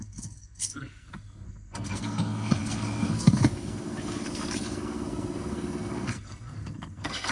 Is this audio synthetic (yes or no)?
yes